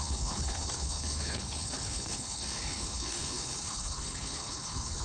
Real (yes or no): no